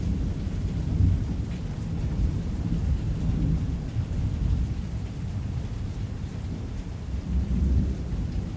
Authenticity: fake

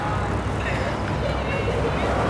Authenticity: real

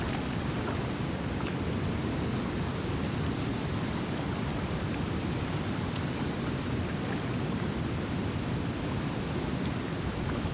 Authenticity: fake